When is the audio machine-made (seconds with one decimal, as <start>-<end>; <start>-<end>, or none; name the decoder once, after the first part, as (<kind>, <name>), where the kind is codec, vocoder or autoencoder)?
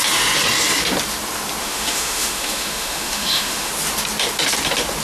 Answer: 1.6-3.7 (autoencoder, DAC-VAE)